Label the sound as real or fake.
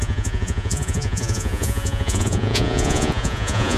fake